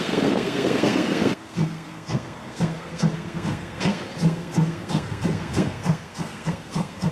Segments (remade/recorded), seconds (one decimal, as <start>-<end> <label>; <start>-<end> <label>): 0.0-7.1 remade